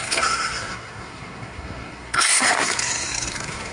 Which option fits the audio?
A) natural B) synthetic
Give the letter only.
B